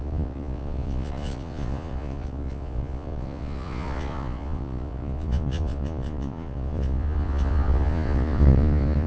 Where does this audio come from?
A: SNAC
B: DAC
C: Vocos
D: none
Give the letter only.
C